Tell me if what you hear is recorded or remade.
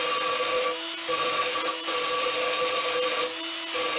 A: recorded